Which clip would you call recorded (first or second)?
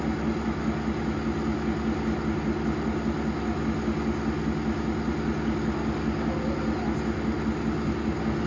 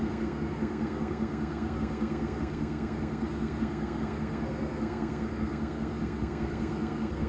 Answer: first